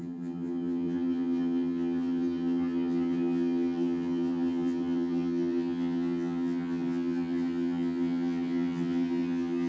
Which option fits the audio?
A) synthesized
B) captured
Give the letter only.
A